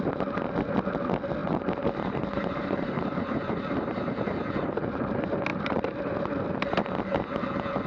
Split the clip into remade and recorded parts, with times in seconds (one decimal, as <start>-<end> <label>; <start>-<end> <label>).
0.0-1.4 recorded; 1.4-5.1 remade; 5.1-5.5 recorded; 5.5-6.0 remade; 6.0-7.9 recorded